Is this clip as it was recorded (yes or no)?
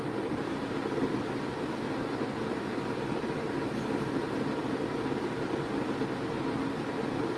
yes